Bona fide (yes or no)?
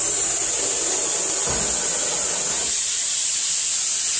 yes